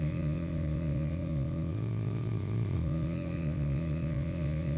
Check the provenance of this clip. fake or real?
fake